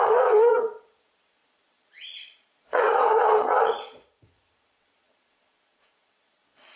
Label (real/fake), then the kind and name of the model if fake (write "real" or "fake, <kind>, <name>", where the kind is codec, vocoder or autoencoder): fake, vocoder, Vocos